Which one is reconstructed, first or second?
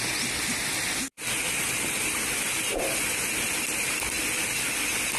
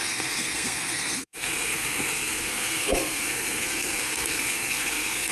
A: second